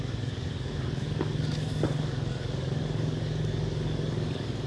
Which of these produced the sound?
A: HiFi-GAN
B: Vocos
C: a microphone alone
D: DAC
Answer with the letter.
D